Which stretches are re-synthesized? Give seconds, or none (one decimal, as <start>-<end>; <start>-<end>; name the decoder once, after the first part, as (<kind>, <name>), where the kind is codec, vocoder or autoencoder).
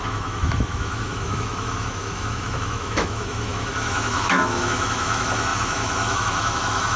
0.0-7.0 (autoencoder, DAC-VAE)